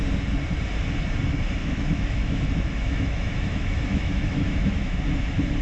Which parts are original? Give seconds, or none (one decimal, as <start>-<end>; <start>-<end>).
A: 0.0-1.6; 5.0-5.6